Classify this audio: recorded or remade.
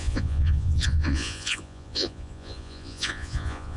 remade